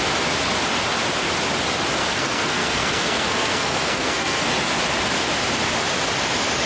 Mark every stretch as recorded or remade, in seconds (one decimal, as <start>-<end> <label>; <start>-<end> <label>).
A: 0.0-2.0 recorded; 2.0-4.5 remade; 4.5-6.7 recorded